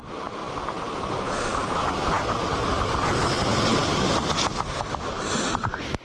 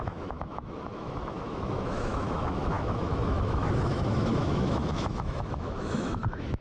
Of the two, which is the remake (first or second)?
second